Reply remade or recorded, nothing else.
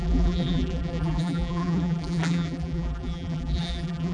remade